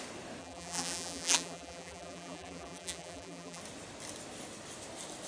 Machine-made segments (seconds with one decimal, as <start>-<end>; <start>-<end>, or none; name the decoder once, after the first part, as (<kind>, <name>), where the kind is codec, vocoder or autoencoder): 0.4-3.6 (vocoder, BigVGAN v2)